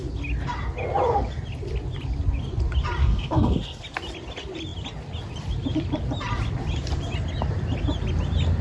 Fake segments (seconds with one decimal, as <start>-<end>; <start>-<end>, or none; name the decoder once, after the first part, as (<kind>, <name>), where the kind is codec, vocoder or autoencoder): 3.0-3.8 (codec, SNAC)